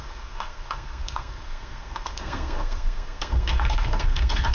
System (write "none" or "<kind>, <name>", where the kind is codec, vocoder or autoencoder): codec, SNAC